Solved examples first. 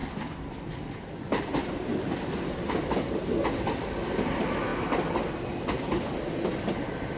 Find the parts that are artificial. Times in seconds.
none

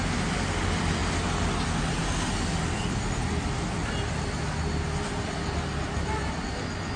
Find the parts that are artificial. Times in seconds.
none

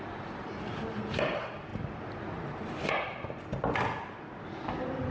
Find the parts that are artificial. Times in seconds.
none

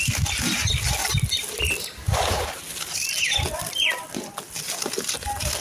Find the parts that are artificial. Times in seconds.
none

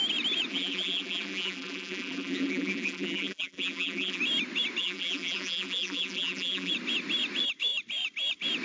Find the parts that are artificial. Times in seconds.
0.5-4.2 (vocoder, BigVGAN v2); 4.8-6.7

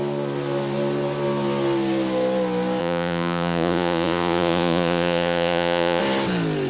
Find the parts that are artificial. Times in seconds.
2.8-6.0 (vocoder, Vocos)